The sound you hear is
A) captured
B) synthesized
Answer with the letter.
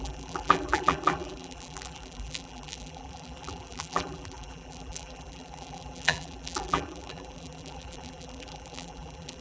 B